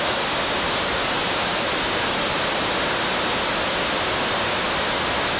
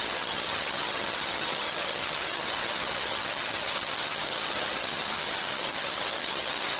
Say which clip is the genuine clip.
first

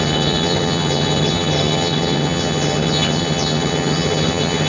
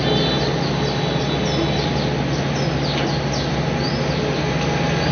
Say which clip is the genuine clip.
second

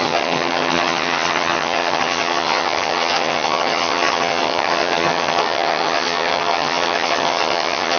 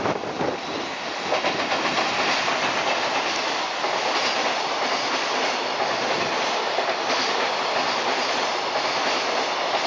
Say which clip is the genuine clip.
second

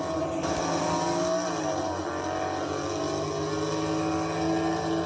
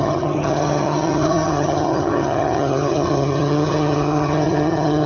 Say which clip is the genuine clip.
first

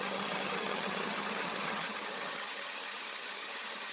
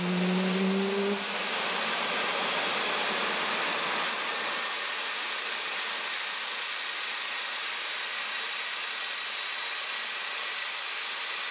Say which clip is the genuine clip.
second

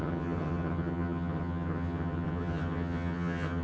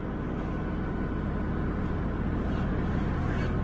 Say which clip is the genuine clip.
second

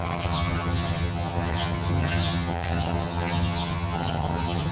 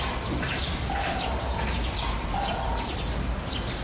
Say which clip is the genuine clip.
second